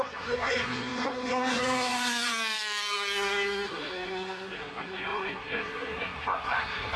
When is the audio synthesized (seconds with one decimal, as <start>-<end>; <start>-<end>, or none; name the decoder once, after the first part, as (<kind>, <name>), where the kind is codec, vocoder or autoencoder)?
0.0-7.0 (codec, SNAC)